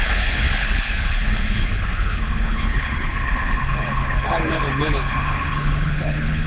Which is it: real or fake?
fake